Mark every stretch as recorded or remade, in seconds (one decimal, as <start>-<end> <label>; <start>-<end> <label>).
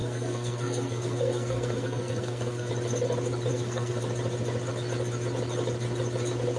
0.0-2.7 remade; 2.7-3.5 recorded; 3.5-4.0 remade; 4.0-6.6 recorded